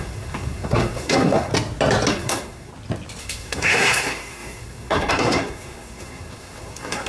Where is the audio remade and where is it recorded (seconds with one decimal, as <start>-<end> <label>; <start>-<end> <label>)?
0.0-1.5 remade; 1.5-2.1 recorded; 2.1-2.7 remade; 2.7-3.2 recorded; 3.2-7.1 remade